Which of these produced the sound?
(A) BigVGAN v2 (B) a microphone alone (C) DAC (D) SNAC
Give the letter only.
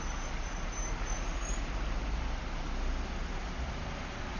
B